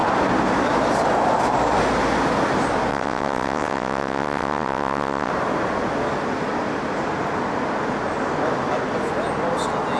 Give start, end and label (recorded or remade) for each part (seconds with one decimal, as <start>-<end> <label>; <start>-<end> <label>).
0.0-2.9 recorded; 2.9-5.3 remade; 5.3-10.0 recorded